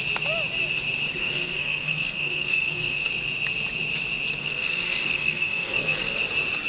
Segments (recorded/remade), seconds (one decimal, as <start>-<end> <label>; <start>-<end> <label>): 0.0-1.2 recorded; 1.2-3.1 remade; 3.1-4.4 recorded; 4.4-6.2 remade; 6.2-6.7 recorded